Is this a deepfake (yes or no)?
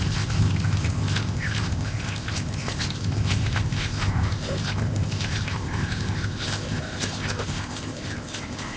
yes